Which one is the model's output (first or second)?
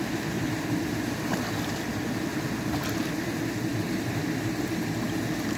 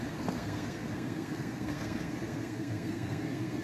second